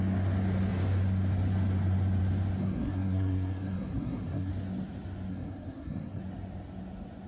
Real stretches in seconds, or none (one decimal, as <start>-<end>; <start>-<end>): 0.0-2.6; 4.5-5.3; 6.2-7.3